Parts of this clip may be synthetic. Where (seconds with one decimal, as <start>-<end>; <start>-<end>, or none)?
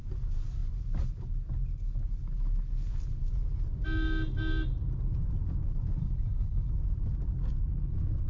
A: 6.0-6.7